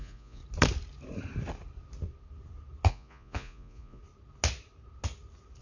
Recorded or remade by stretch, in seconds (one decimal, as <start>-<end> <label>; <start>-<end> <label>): 0.0-0.4 remade; 0.4-2.9 recorded; 2.9-4.0 remade; 4.0-5.6 recorded